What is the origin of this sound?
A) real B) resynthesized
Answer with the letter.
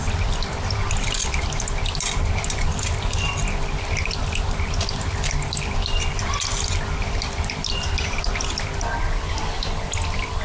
A